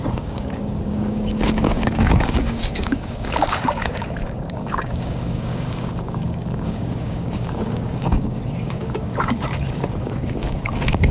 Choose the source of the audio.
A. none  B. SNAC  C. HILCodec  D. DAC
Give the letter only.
D